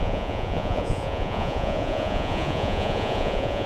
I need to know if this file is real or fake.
fake